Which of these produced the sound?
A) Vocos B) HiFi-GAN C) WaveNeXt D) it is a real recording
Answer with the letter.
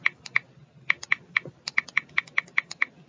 D